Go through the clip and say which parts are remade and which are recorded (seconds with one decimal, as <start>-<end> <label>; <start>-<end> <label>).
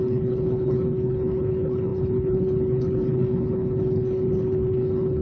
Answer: 0.0-5.2 remade